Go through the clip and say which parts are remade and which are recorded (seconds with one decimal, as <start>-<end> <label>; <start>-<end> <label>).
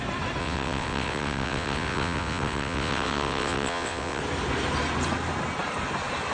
0.0-0.4 recorded; 0.4-4.2 remade; 4.2-6.3 recorded